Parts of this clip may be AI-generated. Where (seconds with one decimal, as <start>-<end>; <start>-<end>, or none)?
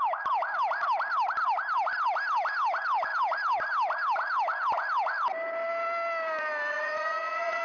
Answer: 6.7-7.6